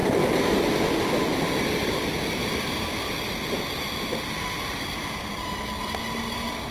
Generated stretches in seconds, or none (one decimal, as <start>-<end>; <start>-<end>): 1.2-6.7